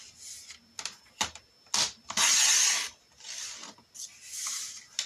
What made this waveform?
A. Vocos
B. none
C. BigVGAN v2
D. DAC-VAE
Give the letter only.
B